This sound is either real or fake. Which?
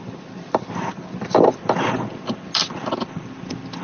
real